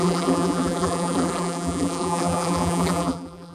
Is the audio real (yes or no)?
no